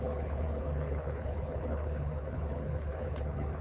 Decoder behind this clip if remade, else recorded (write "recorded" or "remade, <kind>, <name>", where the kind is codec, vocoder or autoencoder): remade, codec, HILCodec